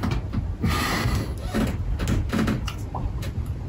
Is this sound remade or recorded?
recorded